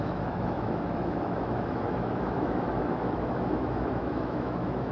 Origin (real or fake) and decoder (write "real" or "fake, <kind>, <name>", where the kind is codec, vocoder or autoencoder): fake, autoencoder, DAC-VAE